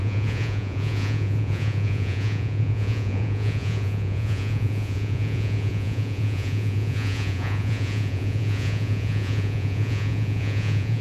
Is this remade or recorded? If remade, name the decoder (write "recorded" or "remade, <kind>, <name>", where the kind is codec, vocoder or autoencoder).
remade, vocoder, Vocos